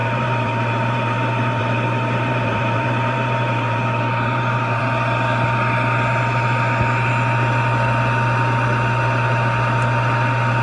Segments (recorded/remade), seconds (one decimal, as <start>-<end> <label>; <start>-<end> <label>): 0.0-4.8 remade; 4.8-10.6 recorded